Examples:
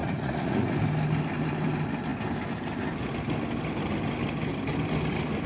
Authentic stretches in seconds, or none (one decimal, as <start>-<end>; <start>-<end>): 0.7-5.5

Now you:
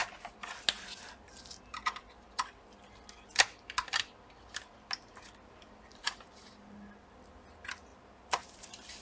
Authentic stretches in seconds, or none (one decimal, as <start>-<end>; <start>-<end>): 0.0-5.9; 7.1-7.9

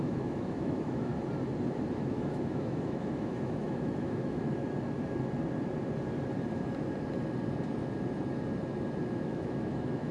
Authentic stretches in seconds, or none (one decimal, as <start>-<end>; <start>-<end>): 1.1-2.0; 4.6-9.1